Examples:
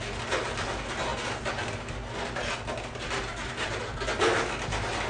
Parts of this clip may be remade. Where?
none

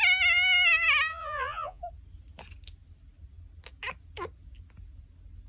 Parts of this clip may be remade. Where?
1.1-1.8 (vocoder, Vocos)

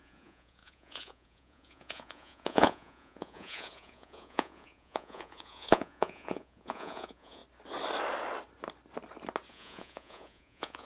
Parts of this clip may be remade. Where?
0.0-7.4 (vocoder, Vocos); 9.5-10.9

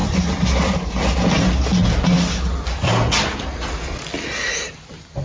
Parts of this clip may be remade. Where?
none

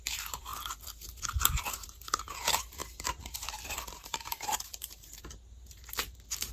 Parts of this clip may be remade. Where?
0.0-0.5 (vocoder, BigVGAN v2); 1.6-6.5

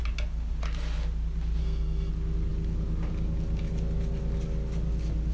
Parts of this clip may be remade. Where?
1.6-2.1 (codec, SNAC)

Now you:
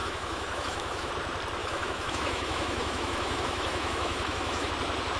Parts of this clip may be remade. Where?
0.0-1.1 (autoencoder, DAC-VAE); 1.6-4.7

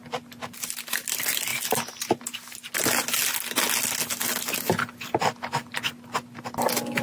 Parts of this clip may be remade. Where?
1.5-2.2 (vocoder, BigVGAN v2)